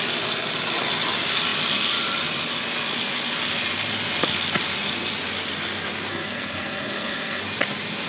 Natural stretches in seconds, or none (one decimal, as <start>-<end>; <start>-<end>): 0.0-6.1; 7.4-8.1